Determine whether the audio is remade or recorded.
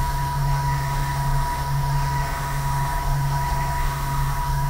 remade